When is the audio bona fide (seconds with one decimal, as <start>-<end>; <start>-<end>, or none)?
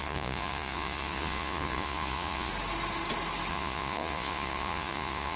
2.5-3.5